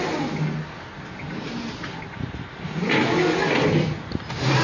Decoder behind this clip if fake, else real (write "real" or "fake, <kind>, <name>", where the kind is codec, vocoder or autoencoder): real